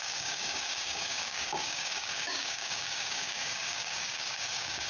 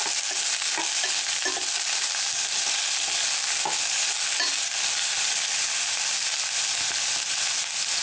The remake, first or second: first